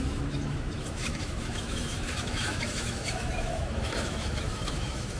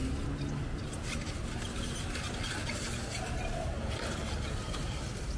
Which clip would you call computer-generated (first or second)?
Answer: first